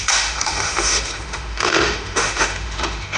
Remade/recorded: remade